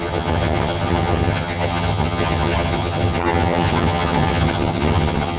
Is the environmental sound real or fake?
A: fake